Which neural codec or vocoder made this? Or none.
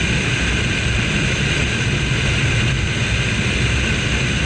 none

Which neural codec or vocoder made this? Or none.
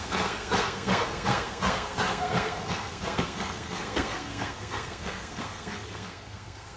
codec, SNAC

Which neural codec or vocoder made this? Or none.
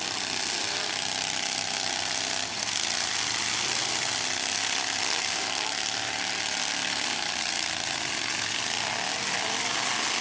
none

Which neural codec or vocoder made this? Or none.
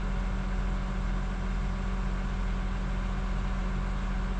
none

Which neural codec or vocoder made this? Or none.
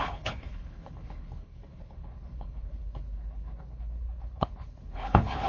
codec, HILCodec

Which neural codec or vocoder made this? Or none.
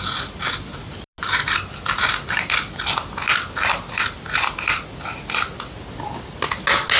none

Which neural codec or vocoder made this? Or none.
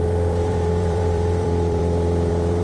vocoder, BigVGAN v2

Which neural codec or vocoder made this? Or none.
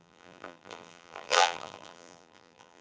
vocoder, BigVGAN v2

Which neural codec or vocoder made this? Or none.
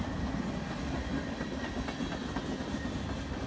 none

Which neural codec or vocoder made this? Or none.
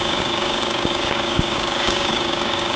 codec, DAC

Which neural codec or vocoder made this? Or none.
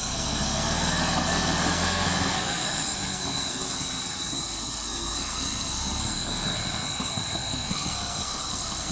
codec, SNAC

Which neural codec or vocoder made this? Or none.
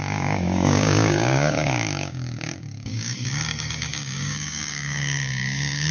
codec, DAC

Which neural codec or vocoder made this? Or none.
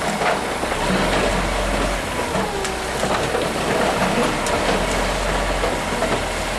none